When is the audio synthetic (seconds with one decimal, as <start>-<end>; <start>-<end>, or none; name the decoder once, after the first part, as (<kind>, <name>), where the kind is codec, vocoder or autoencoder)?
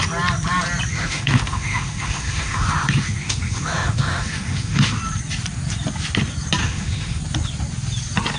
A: 0.9-5.0 (autoencoder, DAC-VAE); 6.6-7.2